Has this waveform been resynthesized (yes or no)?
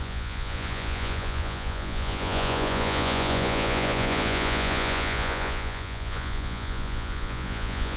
yes